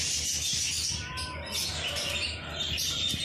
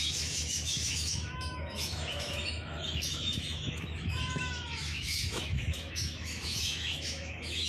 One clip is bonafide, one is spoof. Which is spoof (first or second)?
second